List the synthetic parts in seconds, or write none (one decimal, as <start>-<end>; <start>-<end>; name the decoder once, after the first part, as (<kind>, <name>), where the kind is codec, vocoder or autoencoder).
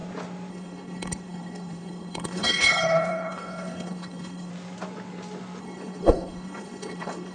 0.5-4.5 (codec, HILCodec); 5.6-7.3